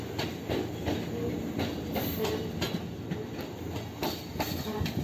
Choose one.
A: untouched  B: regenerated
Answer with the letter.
A